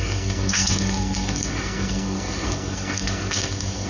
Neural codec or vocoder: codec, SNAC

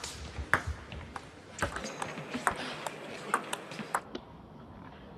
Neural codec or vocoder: none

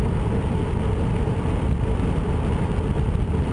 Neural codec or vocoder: none